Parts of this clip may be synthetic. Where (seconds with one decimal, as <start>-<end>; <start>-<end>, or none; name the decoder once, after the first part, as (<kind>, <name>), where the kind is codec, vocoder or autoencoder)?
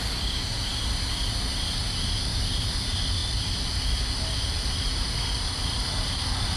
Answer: none